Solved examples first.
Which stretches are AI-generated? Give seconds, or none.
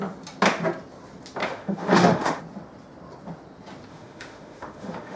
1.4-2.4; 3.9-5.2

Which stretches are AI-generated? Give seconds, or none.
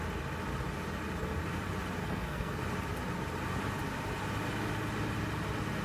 2.0-2.6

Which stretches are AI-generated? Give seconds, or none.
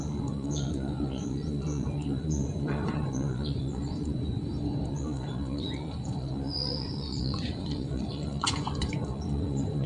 0.0-4.3; 4.9-9.9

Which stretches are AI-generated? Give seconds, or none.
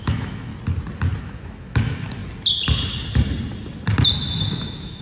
0.0-0.5; 1.2-2.2; 4.5-5.0